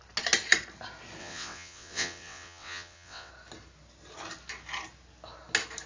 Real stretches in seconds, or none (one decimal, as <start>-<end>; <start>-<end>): 0.0-1.2; 3.3-5.9